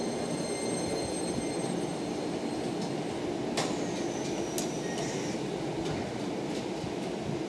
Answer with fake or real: real